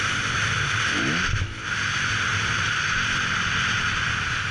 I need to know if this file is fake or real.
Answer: real